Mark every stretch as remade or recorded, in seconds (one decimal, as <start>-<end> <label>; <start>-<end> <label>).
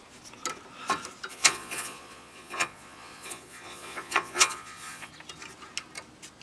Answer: 0.0-1.3 recorded; 1.3-5.1 remade; 5.1-6.4 recorded